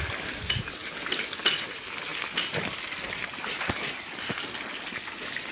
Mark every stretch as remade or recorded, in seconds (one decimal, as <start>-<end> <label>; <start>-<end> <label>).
0.0-5.5 recorded